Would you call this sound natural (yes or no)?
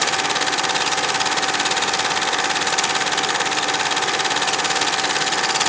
yes